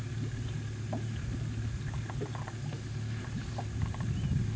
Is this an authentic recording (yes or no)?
yes